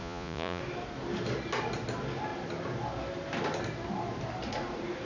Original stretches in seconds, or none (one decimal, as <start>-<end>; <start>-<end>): 0.6-5.1